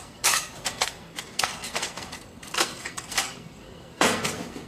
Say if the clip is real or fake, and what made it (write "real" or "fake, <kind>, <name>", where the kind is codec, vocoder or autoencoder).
fake, codec, SNAC